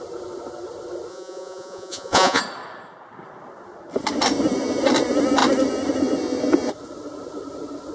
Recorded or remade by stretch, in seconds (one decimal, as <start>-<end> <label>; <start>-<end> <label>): 0.0-1.1 recorded; 1.1-2.4 remade; 2.4-7.9 recorded